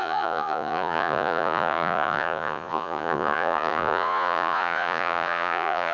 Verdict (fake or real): fake